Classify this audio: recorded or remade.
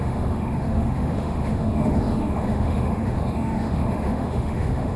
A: remade